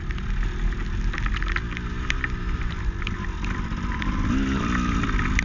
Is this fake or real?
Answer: real